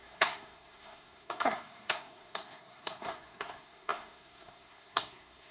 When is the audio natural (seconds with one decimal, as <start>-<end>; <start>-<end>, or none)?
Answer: none